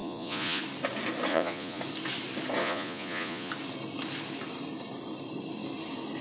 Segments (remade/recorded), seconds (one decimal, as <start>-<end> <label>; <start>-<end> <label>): 0.0-0.6 remade; 0.6-1.3 recorded; 1.3-1.8 remade; 1.8-2.6 recorded; 2.6-3.5 remade; 3.5-6.2 recorded